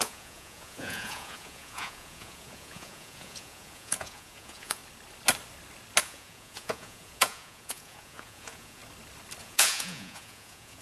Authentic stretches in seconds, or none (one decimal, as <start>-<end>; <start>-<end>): 4.8-6.0; 8.8-9.4